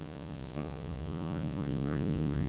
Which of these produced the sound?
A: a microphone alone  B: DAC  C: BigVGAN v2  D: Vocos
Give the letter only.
D